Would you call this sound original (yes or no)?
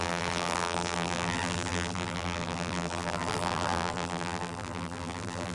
no